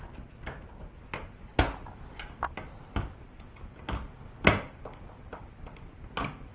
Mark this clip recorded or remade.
recorded